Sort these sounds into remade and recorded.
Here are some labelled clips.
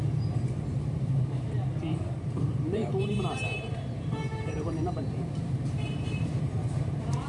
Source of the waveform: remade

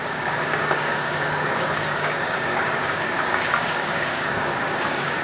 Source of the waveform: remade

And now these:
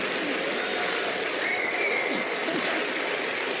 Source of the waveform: recorded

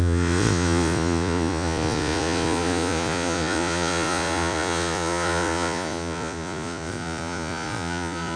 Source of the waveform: remade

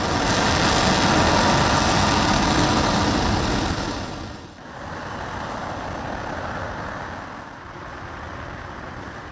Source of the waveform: recorded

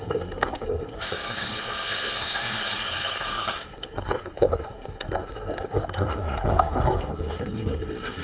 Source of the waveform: remade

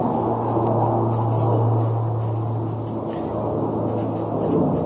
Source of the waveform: recorded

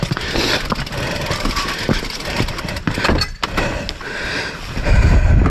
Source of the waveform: recorded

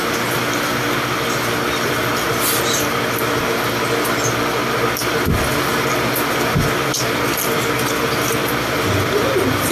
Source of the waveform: recorded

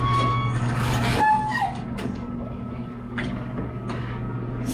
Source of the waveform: remade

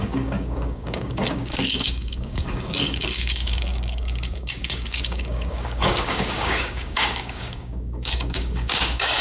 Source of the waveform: remade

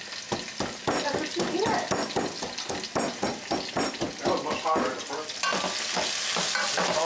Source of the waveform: recorded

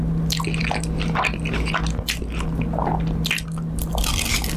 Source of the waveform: recorded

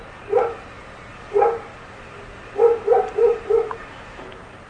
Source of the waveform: recorded